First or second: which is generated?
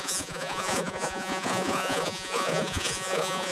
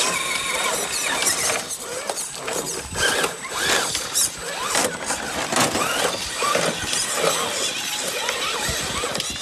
first